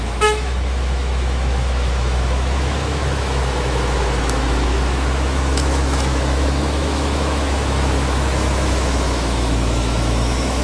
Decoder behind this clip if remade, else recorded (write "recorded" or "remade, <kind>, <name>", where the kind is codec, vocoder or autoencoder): remade, autoencoder, DAC-VAE